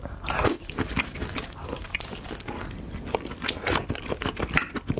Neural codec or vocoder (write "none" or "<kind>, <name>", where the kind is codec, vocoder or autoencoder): none